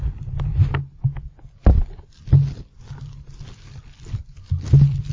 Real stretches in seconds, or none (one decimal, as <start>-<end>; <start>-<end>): 0.0-5.1

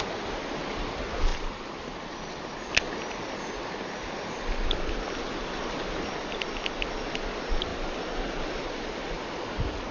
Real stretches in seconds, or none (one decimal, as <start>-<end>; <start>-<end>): 0.0-9.9